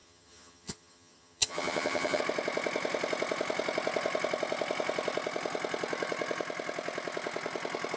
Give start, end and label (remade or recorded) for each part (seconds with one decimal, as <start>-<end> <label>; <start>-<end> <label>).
0.0-2.2 remade; 2.2-8.0 recorded